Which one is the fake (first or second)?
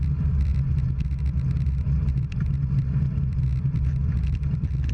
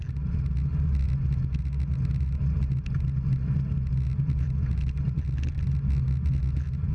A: first